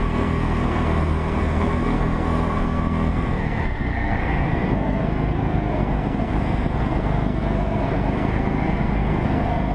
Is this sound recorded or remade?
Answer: remade